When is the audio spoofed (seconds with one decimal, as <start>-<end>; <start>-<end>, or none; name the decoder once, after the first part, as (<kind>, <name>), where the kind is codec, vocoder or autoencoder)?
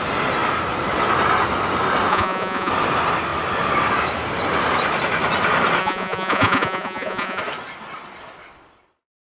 2.1-2.7 (vocoder, Vocos); 5.8-7.4